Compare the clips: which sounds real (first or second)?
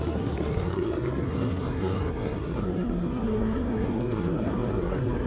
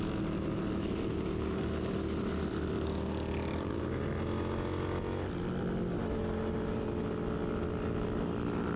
second